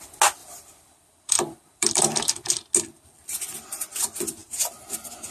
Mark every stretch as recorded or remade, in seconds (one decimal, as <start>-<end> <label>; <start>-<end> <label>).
0.0-0.4 recorded; 0.4-2.5 remade; 2.5-4.4 recorded; 4.4-5.3 remade